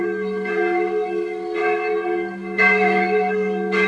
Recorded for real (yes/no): no